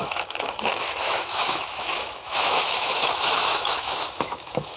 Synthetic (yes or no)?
yes